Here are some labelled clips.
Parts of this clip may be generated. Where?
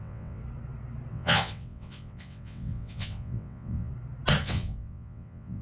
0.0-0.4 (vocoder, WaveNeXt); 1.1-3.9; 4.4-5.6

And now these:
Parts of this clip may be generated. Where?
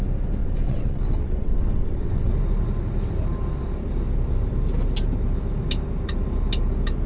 0.4-2.3 (vocoder, WaveNeXt)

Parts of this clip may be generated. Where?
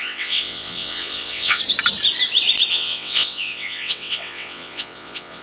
0.0-1.6 (vocoder, WaveNeXt); 2.7-5.4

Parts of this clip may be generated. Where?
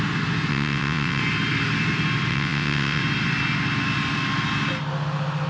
0.5-1.2 (vocoder, WaveNeXt); 2.3-3.0